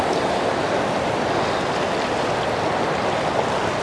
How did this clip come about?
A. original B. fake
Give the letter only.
A